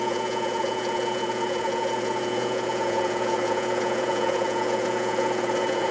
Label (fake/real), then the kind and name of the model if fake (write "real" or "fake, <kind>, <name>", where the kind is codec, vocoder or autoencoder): fake, vocoder, Vocos